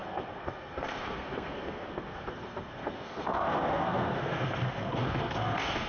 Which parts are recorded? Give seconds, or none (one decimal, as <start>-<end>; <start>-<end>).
none